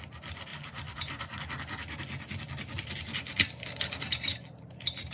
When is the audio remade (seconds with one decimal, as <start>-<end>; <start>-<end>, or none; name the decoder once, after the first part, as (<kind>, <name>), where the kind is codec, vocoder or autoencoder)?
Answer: none